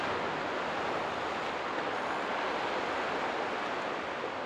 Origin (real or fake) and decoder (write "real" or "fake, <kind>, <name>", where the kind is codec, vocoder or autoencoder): real